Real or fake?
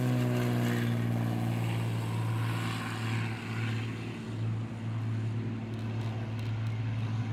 real